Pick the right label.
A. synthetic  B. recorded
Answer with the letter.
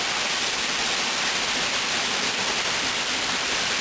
B